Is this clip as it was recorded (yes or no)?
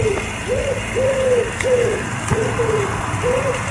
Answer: no